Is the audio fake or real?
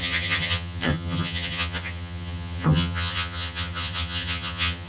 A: fake